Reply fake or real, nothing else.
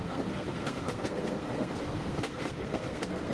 fake